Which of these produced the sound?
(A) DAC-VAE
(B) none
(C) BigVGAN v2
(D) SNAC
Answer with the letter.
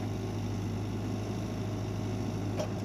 B